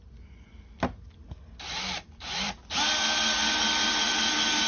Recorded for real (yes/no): yes